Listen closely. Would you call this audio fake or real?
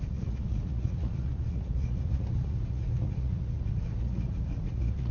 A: fake